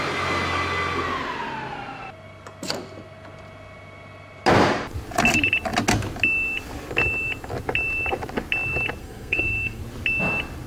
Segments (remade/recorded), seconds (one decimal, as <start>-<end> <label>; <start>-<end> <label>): 0.0-9.0 recorded; 9.0-9.8 remade; 9.8-10.7 recorded